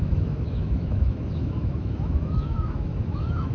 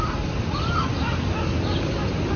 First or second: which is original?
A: second